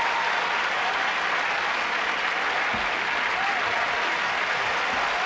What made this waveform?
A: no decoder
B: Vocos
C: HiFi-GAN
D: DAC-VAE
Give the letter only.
A